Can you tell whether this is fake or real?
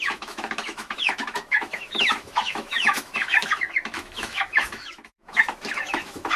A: fake